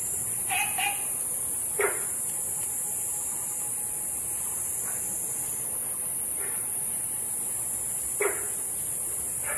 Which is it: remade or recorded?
recorded